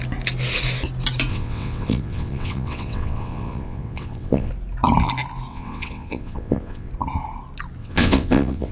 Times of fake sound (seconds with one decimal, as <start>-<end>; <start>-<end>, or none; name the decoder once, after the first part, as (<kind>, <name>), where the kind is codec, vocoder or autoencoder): 1.3-4.5 (vocoder, WaveNeXt); 5.5-6.9; 7.8-8.7